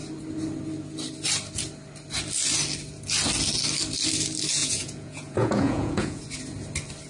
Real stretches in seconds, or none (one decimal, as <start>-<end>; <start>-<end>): 0.0-4.6; 6.2-7.1